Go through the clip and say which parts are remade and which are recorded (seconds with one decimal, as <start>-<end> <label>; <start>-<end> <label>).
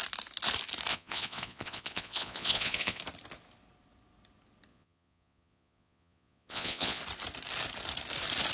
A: 0.0-0.9 recorded; 0.9-3.0 remade; 3.0-4.7 recorded; 4.7-7.0 remade; 7.0-8.5 recorded